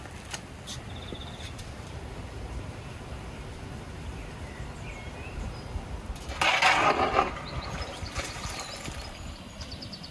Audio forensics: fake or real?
real